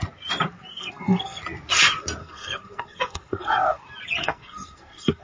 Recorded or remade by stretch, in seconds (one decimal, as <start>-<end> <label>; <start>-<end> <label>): 0.0-0.7 recorded; 0.7-1.4 remade; 1.4-2.2 recorded; 2.2-3.8 remade; 3.8-4.2 recorded; 4.2-5.2 remade